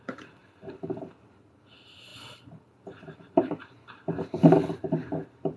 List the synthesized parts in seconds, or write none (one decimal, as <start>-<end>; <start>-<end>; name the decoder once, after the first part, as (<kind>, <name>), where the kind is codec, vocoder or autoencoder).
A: 0.0-5.6 (vocoder, BigVGAN v2)